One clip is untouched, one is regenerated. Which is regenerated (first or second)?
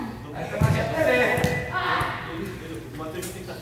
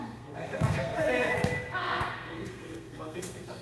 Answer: second